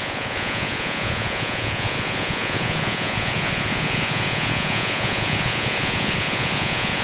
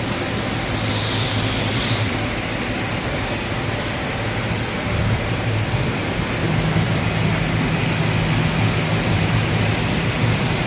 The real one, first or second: second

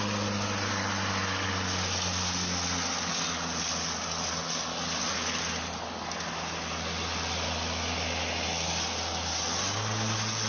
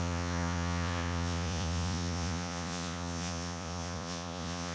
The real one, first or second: first